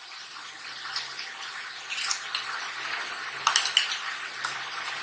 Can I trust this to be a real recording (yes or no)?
yes